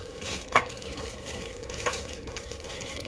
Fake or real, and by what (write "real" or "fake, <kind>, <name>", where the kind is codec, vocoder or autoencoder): fake, codec, SNAC